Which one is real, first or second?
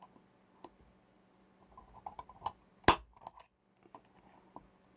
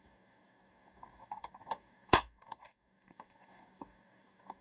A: first